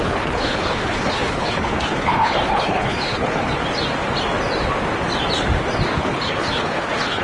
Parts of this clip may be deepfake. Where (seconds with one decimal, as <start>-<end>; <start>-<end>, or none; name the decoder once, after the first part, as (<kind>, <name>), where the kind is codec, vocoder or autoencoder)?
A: 0.0-3.6 (codec, HILCodec); 6.0-7.2